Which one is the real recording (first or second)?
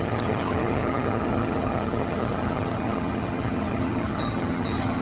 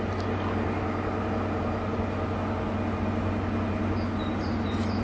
second